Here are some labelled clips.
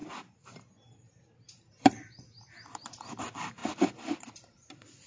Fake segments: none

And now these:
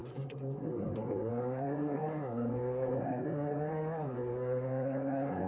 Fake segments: 0.0-5.5 (codec, SNAC)

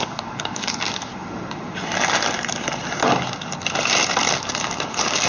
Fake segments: 0.0-1.1 (codec, DAC); 4.3-5.3

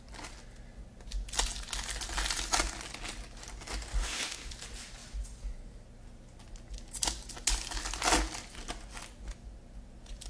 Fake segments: 4.0-4.5 (autoencoder, DAC-VAE)

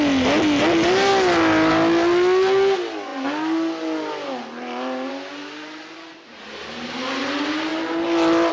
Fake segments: none